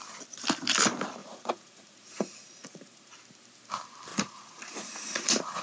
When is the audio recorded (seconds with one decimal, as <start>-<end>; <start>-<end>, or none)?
0.0-1.2; 3.1-4.1